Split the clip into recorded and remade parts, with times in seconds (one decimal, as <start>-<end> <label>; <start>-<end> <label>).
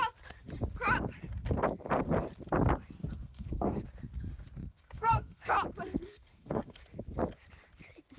0.0-3.0 recorded; 3.0-3.8 remade; 3.8-4.6 recorded; 4.6-5.5 remade; 5.5-5.9 recorded; 5.9-6.8 remade; 6.8-8.2 recorded